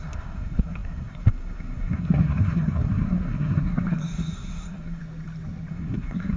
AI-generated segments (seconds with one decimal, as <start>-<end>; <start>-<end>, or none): 0.0-5.0; 5.7-6.4

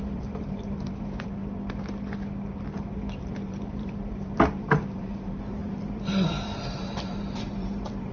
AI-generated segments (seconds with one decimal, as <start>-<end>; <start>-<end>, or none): 0.0-1.4; 3.3-8.1

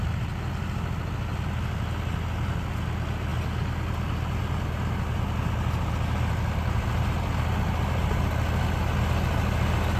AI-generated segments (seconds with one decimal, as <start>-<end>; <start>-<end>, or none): none

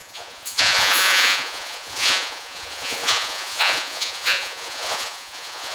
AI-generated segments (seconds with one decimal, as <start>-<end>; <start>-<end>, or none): 0.0-5.7

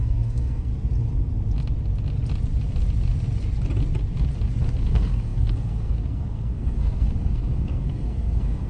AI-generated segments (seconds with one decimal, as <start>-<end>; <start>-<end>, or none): 0.0-0.7; 4.8-8.7